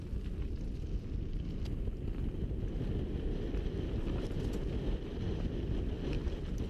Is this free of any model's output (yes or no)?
yes